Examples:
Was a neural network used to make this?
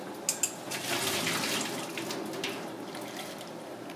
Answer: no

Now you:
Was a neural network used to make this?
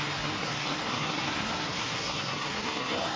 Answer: yes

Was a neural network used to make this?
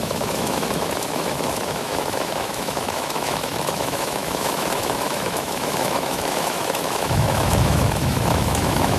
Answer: yes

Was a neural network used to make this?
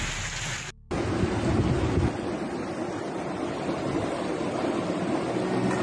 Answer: no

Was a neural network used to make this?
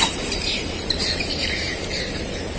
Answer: yes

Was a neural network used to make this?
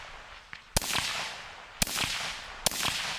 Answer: no